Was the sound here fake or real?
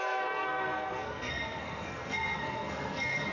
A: fake